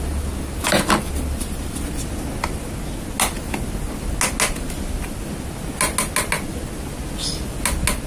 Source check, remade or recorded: recorded